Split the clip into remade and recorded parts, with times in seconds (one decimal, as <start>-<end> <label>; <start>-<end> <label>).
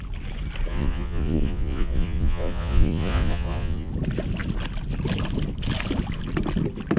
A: 0.0-0.7 recorded; 0.7-3.9 remade; 3.9-7.0 recorded